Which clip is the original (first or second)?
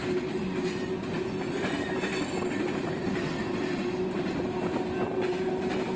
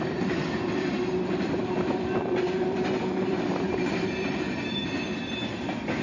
first